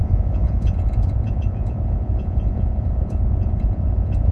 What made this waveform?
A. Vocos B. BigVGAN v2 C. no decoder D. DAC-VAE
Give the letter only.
A